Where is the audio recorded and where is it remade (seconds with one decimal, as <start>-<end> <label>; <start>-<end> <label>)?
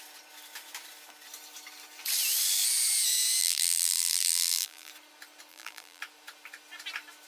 0.0-3.4 recorded; 3.4-4.9 remade; 4.9-5.5 recorded; 5.5-6.0 remade; 6.0-7.3 recorded